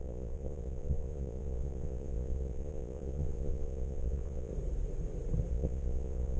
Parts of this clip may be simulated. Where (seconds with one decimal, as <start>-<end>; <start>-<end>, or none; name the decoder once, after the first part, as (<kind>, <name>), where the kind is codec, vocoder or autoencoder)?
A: 0.0-4.5 (vocoder, Vocos); 5.5-6.4